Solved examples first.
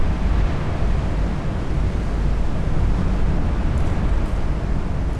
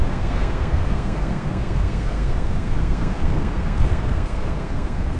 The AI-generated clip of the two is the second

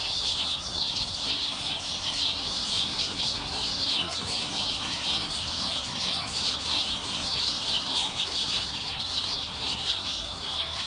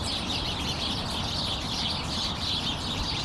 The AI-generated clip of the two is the first